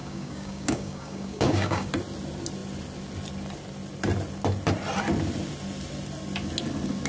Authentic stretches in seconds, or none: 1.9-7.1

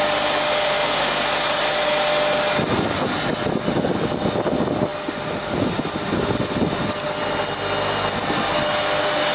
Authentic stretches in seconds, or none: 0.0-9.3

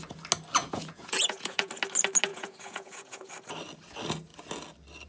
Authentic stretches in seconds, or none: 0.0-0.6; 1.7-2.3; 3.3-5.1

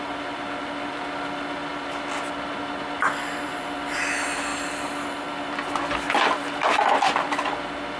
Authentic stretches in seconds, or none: 0.0-8.0

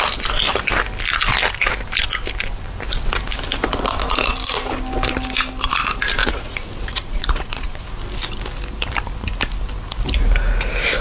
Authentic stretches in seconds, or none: 0.0-6.2; 7.9-11.0

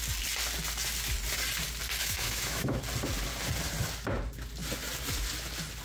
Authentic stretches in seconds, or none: 0.0-2.0; 2.8-5.8